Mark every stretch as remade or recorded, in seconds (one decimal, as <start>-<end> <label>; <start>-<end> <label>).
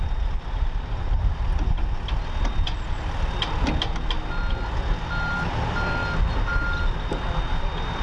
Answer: 0.0-8.0 recorded